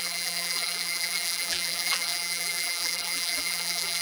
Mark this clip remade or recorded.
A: remade